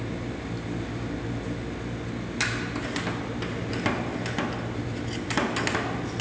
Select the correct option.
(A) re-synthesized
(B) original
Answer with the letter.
B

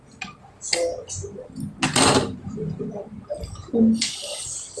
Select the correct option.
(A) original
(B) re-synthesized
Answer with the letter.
A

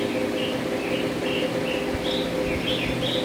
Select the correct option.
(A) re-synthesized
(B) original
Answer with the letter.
B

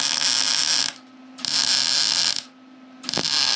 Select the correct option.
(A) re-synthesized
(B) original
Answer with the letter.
B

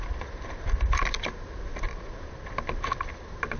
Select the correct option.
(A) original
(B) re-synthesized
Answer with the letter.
A